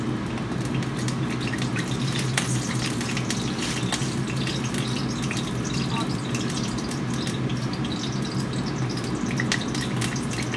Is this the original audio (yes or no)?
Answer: yes